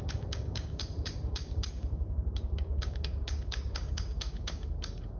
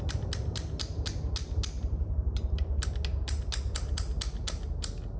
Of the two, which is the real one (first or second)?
second